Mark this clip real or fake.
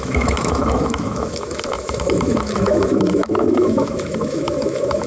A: fake